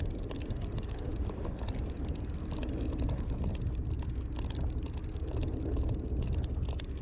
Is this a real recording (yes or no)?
yes